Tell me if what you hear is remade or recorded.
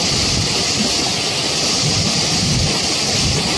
recorded